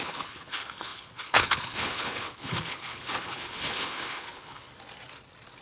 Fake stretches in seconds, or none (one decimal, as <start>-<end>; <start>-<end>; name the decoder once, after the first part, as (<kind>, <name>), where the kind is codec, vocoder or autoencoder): 0.0-4.7 (codec, HILCodec)